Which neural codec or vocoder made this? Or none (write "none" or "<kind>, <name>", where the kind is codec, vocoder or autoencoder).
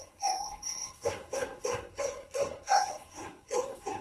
codec, SNAC